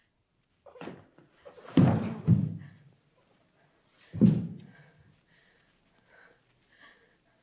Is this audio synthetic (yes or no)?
no